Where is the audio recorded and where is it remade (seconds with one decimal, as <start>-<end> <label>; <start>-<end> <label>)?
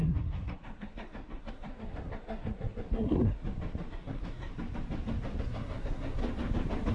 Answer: 0.0-3.4 remade; 3.4-3.9 recorded; 3.9-4.5 remade; 4.5-5.4 recorded; 5.4-6.2 remade; 6.2-6.9 recorded